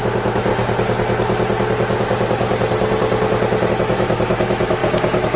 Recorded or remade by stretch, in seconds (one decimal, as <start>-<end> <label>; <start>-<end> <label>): 0.0-0.5 remade; 0.5-3.7 recorded; 3.7-5.4 remade